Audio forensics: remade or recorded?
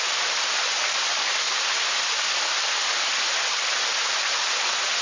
recorded